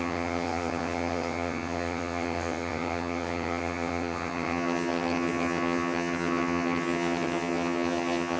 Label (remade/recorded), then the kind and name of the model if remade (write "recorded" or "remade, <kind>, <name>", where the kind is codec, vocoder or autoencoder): remade, vocoder, HiFi-GAN